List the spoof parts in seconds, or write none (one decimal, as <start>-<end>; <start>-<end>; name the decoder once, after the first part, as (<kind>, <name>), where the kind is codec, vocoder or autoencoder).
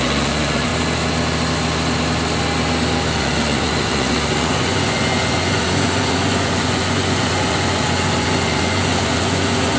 0.0-0.7 (vocoder, Vocos); 3.2-9.8